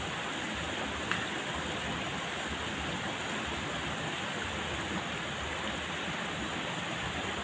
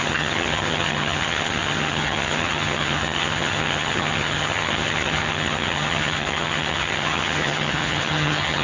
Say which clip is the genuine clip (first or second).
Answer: first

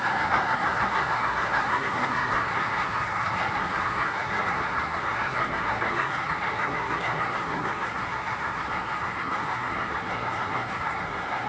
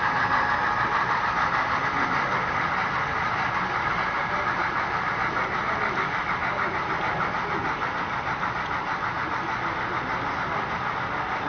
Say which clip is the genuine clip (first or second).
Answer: second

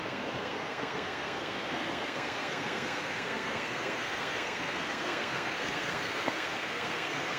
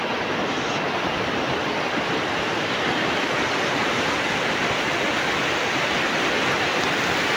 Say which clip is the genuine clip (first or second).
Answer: second